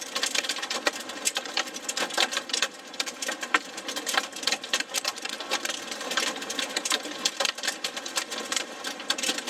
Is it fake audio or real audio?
fake